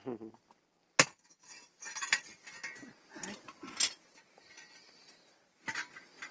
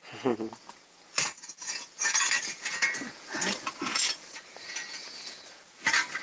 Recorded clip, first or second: first